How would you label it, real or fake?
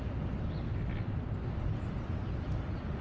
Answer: real